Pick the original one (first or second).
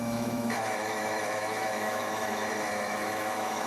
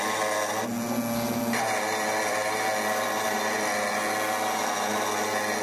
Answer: second